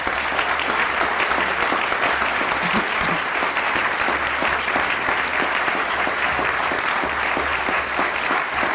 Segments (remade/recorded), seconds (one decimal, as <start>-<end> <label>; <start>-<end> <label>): 0.0-2.3 recorded; 2.3-3.8 remade; 3.8-5.3 recorded; 5.3-7.8 remade; 7.8-8.7 recorded